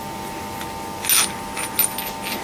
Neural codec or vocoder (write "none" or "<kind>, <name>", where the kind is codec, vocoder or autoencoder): none